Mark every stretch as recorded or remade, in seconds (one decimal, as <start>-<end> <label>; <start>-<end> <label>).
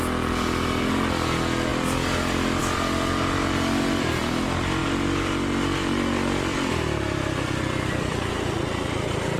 0.0-9.4 recorded